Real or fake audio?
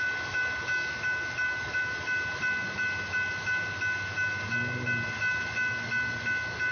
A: real